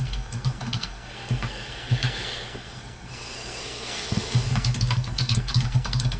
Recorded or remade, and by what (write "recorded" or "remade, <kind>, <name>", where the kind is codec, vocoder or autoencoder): remade, codec, SNAC